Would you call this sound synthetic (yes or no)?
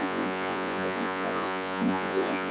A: yes